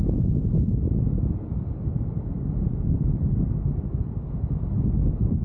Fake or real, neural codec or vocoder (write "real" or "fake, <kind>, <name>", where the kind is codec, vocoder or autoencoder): real